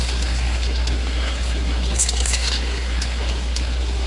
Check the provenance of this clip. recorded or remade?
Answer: remade